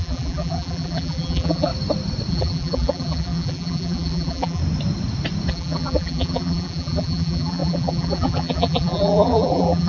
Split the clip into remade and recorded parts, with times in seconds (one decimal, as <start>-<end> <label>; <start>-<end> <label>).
0.0-1.7 remade; 1.7-2.3 recorded; 2.3-4.6 remade; 4.6-5.5 recorded; 5.5-9.9 remade